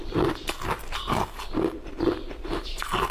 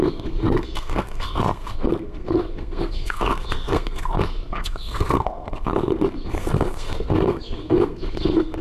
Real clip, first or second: first